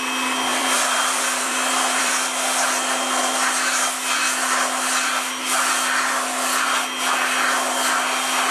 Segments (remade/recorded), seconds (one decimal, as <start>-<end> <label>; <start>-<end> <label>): 0.0-0.5 recorded; 0.5-2.1 remade; 2.1-8.5 recorded